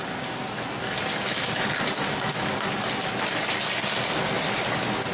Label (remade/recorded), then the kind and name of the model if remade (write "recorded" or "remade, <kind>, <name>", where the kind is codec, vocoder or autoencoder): recorded